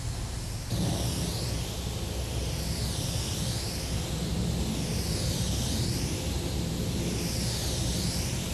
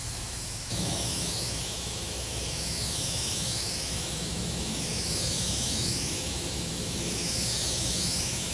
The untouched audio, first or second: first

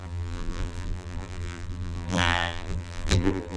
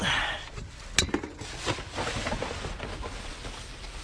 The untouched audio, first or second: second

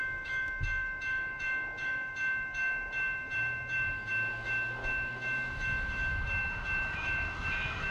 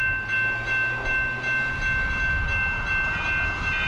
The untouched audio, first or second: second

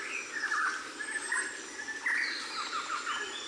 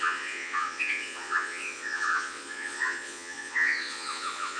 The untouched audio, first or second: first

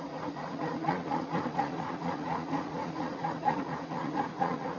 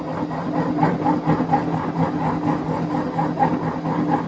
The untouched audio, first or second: second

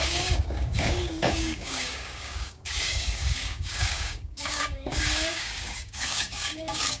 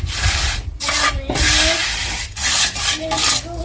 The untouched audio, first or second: second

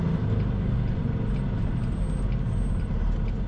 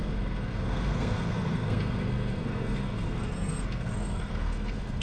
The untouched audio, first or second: first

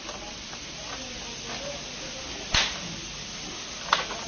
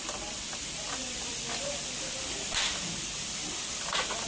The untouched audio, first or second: first